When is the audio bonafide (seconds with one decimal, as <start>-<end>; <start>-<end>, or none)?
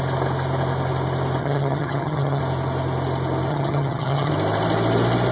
0.0-1.4; 2.4-3.5; 4.3-5.3